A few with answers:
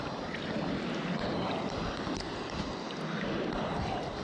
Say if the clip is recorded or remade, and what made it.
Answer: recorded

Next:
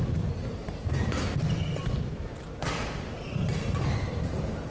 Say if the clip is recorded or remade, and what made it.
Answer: recorded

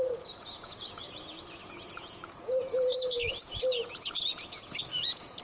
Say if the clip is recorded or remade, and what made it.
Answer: remade, vocoder, Vocos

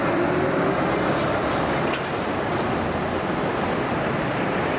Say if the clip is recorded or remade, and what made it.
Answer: recorded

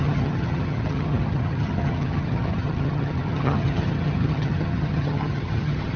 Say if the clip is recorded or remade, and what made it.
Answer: remade, vocoder, HiFi-GAN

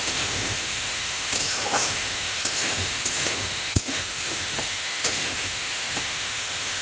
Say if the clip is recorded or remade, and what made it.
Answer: remade, autoencoder, DAC-VAE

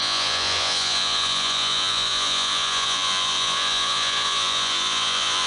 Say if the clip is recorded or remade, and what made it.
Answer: remade, vocoder, Vocos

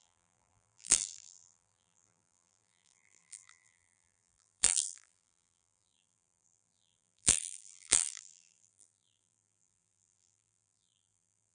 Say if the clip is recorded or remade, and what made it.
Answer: remade, vocoder, BigVGAN v2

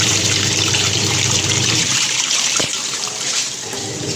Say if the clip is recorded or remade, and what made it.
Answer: remade, vocoder, BigVGAN v2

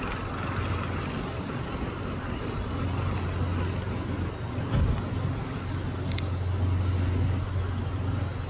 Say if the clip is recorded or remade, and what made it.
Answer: recorded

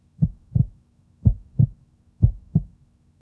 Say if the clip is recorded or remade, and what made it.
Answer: remade, autoencoder, DAC-VAE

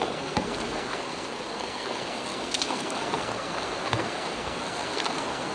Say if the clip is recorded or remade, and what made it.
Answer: remade, codec, SNAC